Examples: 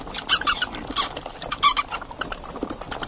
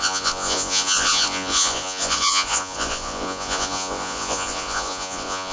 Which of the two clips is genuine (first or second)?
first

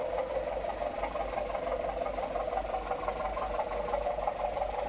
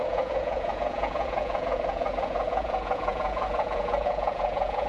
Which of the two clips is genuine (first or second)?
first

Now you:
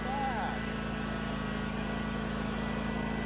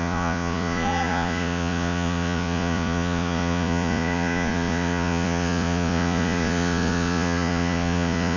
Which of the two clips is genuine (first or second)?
first